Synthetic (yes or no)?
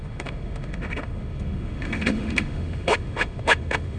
yes